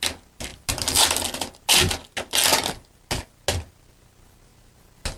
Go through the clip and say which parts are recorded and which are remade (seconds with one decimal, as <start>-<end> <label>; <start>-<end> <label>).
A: 0.0-5.2 recorded